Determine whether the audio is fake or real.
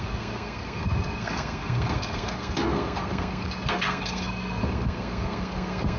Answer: fake